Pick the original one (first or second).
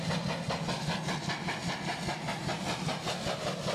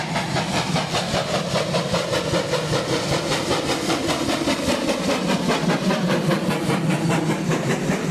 first